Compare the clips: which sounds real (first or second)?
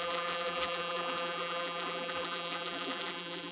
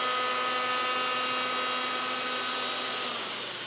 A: second